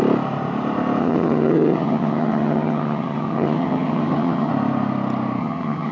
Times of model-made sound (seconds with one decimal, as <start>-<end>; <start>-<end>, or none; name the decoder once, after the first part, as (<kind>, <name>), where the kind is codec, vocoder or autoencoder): 1.0-4.5 (vocoder, HiFi-GAN); 5.4-5.9